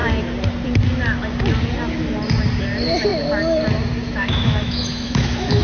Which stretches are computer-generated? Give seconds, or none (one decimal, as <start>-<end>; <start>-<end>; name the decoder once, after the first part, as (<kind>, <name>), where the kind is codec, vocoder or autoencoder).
4.0-5.6 (autoencoder, DAC-VAE)

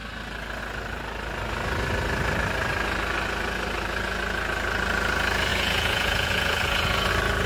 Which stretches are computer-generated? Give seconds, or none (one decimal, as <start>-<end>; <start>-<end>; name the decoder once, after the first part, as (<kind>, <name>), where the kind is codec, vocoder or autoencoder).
5.5-7.1 (vocoder, Vocos)

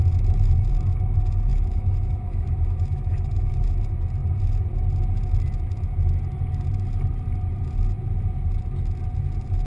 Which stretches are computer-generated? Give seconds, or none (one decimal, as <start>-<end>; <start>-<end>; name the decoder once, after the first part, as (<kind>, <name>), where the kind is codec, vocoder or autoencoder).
1.5-3.5 (autoencoder, DAC-VAE)

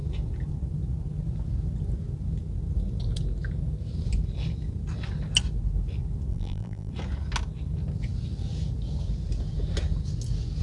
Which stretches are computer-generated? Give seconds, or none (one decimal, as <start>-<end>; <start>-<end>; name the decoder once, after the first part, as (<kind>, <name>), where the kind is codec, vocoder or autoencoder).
6.3-6.9 (vocoder, BigVGAN v2)

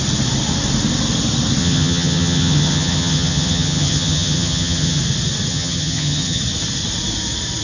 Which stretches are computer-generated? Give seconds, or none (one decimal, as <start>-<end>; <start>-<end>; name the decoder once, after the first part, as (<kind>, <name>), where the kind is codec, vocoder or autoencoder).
1.6-5.0 (vocoder, HiFi-GAN); 5.5-6.4

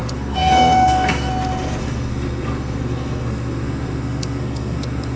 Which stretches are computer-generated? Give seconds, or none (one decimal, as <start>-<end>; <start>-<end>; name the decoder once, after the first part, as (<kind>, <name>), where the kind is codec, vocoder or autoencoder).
0.0-1.3 (codec, SNAC); 1.8-5.2

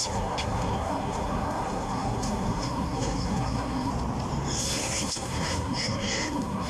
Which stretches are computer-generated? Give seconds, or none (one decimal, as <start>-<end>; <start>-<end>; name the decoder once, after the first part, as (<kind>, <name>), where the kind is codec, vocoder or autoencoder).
0.0-3.9 (codec, SNAC); 4.6-6.7

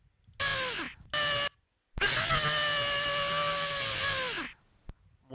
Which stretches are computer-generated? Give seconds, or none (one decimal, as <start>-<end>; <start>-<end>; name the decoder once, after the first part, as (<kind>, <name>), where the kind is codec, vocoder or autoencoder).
none